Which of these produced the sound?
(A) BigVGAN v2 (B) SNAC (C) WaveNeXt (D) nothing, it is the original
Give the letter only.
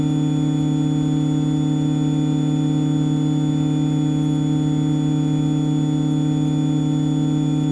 D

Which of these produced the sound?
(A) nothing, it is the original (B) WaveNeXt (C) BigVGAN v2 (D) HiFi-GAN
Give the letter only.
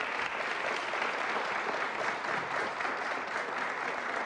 A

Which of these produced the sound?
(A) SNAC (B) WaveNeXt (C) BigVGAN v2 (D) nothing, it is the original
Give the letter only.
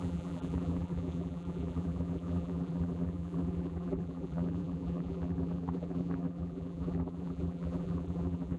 C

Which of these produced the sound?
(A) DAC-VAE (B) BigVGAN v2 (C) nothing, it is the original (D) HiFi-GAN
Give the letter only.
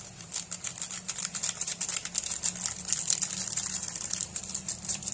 C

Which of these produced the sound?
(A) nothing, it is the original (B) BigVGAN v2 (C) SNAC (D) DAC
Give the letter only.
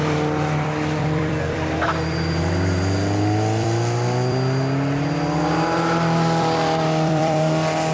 B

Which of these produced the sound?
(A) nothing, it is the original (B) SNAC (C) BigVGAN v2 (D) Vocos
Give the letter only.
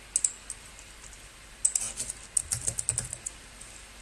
A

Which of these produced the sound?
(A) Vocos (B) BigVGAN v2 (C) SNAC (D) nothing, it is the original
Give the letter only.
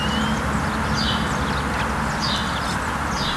D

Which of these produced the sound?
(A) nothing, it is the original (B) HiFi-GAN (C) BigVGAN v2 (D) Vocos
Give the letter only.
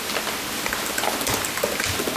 A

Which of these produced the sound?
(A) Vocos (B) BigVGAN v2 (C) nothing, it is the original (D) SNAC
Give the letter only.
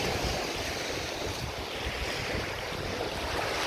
B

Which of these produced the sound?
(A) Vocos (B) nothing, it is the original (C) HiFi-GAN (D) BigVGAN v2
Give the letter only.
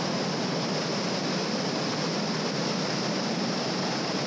B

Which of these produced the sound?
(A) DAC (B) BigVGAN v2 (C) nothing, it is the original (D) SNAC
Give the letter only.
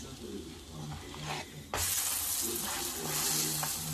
C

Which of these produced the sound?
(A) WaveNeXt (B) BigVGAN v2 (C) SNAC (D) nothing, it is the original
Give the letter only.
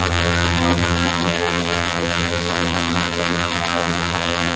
B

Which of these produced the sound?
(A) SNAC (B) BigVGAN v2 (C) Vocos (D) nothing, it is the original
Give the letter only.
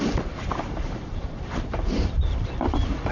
B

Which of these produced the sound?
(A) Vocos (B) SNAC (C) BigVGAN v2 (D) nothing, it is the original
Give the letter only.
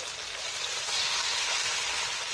D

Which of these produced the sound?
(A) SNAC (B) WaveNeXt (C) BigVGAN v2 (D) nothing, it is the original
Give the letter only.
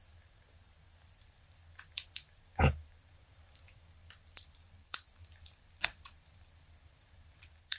C